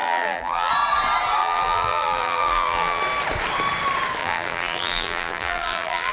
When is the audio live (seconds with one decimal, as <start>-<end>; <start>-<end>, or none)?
0.7-1.4; 3.0-4.2